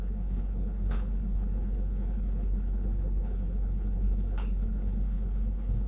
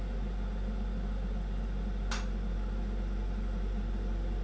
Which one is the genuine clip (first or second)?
second